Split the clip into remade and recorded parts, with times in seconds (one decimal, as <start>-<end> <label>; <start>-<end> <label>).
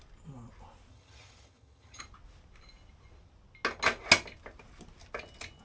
0.0-0.9 recorded; 0.9-2.0 remade; 2.0-5.6 recorded